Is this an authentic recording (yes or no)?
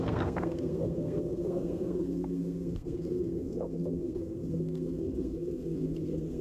no